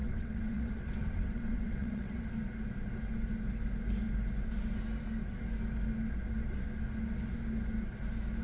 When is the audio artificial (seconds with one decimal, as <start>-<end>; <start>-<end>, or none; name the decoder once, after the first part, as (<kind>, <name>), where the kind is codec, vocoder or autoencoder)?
0.0-2.2 (vocoder, WaveNeXt)